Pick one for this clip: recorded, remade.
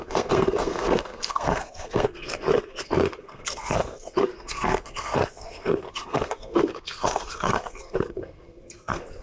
remade